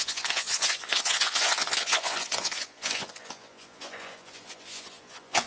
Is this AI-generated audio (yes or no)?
yes